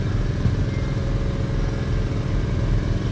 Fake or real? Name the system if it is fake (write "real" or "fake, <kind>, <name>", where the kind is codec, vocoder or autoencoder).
real